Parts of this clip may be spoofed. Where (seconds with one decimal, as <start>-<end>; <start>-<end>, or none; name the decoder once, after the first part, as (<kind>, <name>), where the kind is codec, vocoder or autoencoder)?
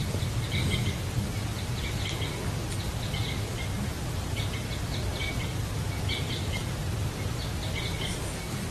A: 0.0-0.6 (vocoder, BigVGAN v2)